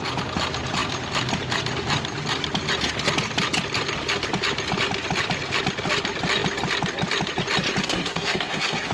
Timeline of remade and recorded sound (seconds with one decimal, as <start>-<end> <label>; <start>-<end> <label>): 0.0-7.8 recorded; 7.8-8.9 remade

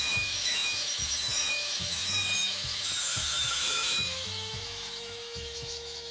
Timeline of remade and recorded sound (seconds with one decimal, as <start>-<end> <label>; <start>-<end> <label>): 0.0-6.1 remade

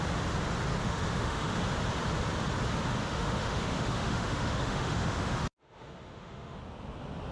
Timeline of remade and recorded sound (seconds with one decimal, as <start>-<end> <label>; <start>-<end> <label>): 0.0-0.8 recorded; 0.8-1.6 remade; 1.6-3.0 recorded; 3.0-6.6 remade; 6.6-7.3 recorded

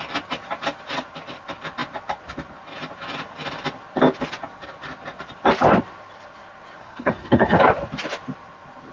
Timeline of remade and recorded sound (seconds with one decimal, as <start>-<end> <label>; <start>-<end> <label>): 0.0-6.8 recorded; 6.8-7.6 remade; 7.6-8.9 recorded